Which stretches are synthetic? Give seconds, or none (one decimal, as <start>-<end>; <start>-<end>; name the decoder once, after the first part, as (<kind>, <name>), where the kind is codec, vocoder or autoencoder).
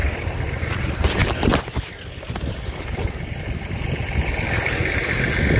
0.0-0.6 (vocoder, BigVGAN v2)